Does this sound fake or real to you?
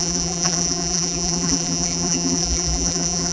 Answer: fake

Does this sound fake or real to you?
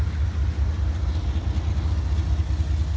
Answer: real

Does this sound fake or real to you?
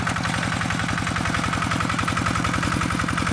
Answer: real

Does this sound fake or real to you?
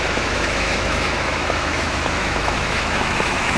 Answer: fake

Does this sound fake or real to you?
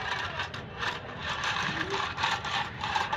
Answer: fake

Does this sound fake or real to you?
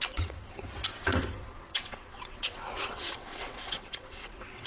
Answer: fake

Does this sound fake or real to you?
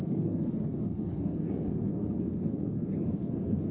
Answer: fake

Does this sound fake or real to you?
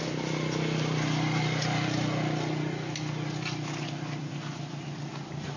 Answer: real